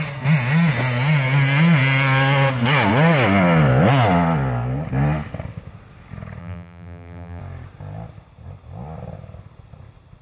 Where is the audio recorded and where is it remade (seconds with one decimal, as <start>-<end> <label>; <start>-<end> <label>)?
0.0-6.4 recorded; 6.4-7.4 remade; 7.4-10.2 recorded